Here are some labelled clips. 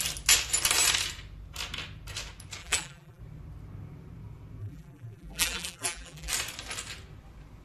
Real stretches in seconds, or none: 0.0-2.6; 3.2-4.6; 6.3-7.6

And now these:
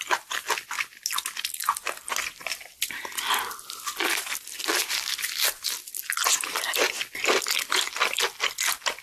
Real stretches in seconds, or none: 0.0-4.8; 5.3-9.0

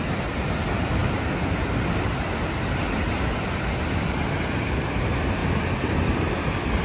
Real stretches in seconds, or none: 1.0-3.0; 5.4-6.3

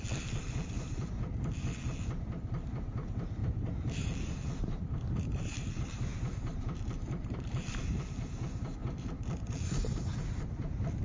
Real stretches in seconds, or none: none

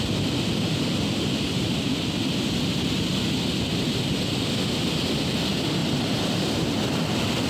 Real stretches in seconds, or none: 0.0-5.8; 6.7-7.5

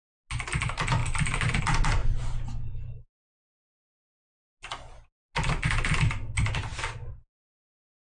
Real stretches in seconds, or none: 0.0-1.0; 1.6-8.1

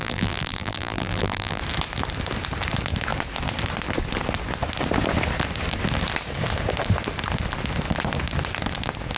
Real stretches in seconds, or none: 1.6-9.2